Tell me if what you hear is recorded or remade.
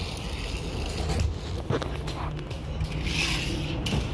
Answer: recorded